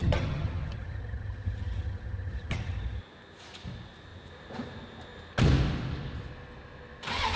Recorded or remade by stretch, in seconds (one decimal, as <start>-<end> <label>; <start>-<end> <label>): 0.0-3.0 remade; 3.0-7.4 recorded